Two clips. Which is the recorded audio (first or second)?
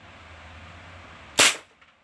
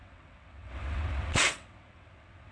first